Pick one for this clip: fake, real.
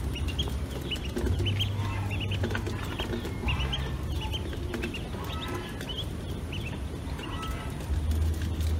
real